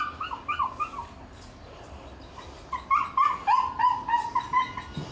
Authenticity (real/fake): real